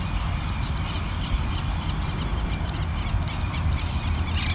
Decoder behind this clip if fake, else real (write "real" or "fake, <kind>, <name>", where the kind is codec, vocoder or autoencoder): real